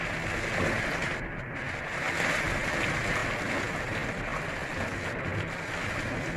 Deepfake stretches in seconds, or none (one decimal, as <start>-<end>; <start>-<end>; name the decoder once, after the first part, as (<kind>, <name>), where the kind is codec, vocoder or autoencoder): none